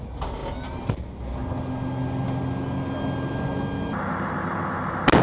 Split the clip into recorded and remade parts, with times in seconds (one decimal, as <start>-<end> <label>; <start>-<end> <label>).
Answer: 0.0-5.2 recorded